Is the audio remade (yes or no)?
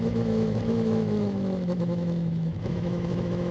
yes